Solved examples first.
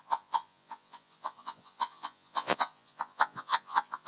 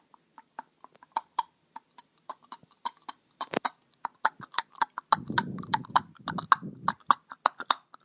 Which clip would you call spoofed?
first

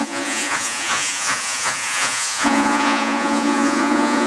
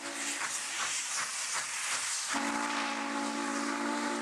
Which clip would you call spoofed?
first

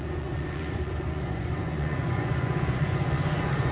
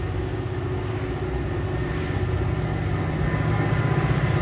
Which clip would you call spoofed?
first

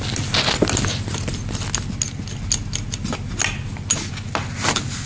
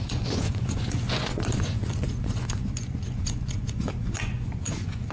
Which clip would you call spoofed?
second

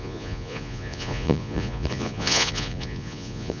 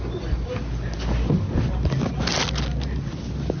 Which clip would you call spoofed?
first